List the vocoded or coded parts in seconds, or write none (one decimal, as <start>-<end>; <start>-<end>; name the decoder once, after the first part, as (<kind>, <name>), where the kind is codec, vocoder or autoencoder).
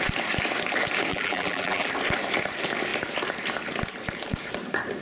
1.1-1.9 (vocoder, BigVGAN v2)